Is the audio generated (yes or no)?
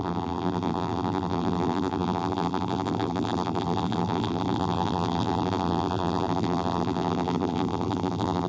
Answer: yes